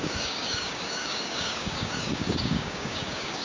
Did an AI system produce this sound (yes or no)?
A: yes